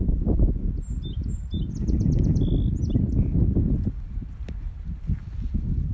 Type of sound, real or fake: real